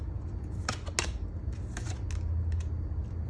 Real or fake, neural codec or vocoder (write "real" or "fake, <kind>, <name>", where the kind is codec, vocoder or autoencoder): real